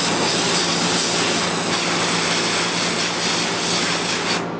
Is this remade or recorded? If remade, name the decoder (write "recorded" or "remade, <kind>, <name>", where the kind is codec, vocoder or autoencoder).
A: recorded